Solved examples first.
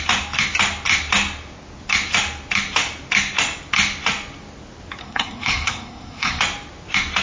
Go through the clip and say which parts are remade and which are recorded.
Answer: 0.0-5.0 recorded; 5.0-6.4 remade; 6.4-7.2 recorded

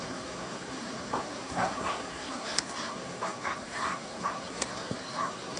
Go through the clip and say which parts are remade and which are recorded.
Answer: 0.0-5.6 remade

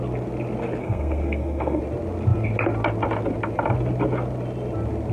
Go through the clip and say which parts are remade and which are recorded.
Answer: 0.0-0.8 recorded; 0.8-1.8 remade; 1.8-5.1 recorded

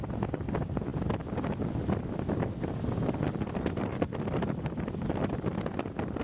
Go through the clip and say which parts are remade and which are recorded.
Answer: 0.0-6.2 recorded

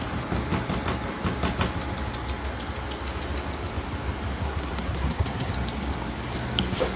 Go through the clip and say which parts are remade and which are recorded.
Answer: 0.0-4.3 recorded; 4.3-5.5 remade; 5.5-7.0 recorded